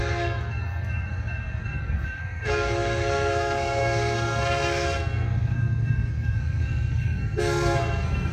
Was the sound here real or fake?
fake